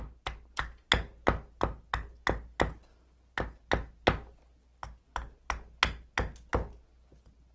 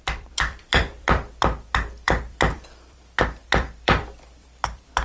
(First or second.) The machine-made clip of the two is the second